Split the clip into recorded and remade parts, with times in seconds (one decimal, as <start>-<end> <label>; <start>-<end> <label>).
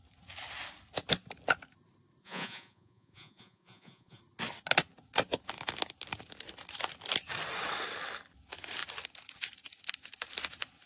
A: 0.0-2.2 recorded; 2.2-4.2 remade; 4.2-10.9 recorded